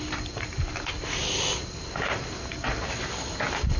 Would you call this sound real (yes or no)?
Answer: yes